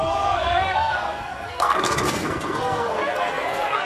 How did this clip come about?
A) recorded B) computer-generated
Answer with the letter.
B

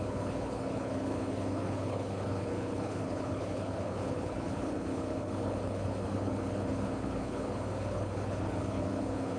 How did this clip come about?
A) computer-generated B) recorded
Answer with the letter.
A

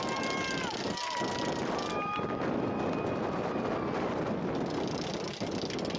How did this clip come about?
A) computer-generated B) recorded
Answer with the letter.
B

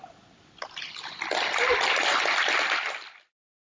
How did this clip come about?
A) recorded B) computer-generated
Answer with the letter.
A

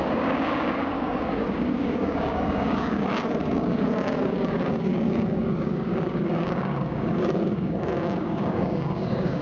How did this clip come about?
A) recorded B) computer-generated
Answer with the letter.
B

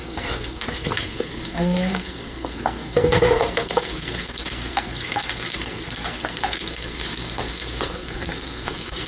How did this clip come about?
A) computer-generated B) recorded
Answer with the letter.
A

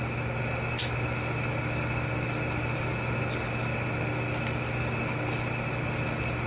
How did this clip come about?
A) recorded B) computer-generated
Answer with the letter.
A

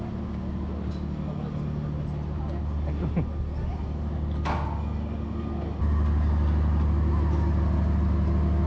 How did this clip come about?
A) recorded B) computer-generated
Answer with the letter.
A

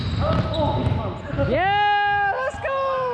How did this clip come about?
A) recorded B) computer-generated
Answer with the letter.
A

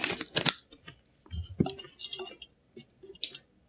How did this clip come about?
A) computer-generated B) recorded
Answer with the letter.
B